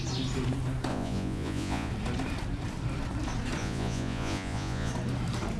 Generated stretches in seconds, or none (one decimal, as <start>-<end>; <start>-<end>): 0.9-1.9; 3.6-4.9